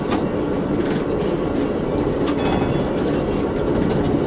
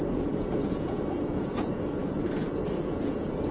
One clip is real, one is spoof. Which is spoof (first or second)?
second